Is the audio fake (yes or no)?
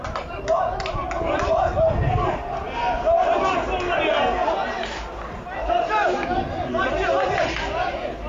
no